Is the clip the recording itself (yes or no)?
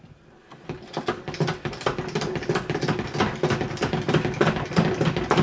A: yes